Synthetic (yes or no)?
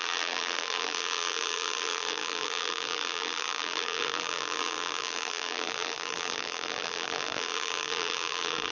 yes